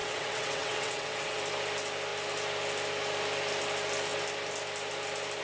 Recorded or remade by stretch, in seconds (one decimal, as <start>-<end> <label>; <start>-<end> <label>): 0.0-1.4 remade; 1.4-5.4 recorded